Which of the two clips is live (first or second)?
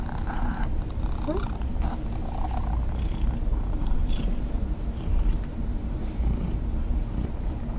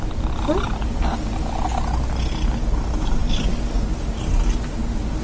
second